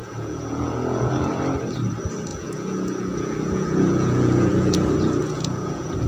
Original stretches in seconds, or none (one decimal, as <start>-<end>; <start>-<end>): 1.3-2.3